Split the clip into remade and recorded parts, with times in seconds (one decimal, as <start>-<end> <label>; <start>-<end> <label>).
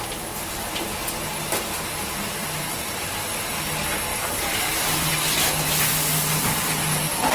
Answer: 0.0-2.4 recorded; 2.4-3.1 remade; 3.1-4.1 recorded; 4.1-5.1 remade; 5.1-7.3 recorded